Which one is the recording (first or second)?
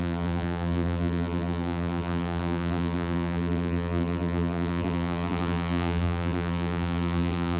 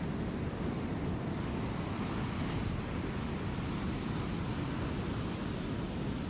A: second